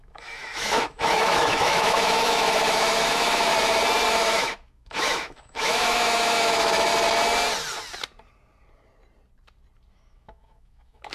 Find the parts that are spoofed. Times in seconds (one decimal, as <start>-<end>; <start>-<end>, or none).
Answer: 0.0-3.5; 4.1-6.9; 9.9-11.1